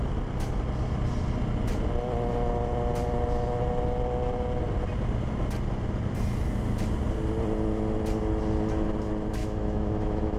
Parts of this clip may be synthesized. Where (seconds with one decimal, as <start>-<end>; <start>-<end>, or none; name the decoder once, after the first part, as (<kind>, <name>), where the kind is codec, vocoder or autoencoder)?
9.4-10.4 (autoencoder, DAC-VAE)